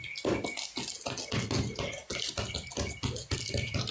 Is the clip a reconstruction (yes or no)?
no